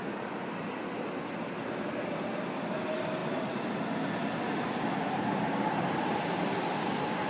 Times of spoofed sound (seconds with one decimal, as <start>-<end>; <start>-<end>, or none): 0.0-3.2; 4.9-7.3